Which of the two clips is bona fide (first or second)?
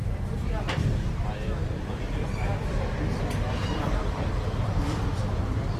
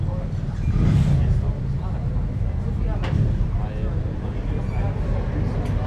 second